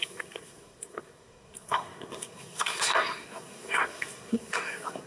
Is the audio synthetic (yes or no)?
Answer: yes